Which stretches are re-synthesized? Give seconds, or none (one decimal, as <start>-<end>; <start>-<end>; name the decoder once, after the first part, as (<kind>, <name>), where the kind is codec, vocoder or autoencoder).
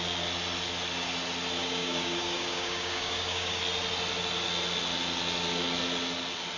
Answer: 1.6-3.6 (codec, DAC)